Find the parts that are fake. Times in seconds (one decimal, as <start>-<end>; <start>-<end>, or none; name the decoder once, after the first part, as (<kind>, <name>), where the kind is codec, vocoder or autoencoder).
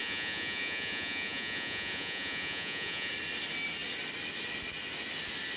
0.0-3.1 (vocoder, Vocos)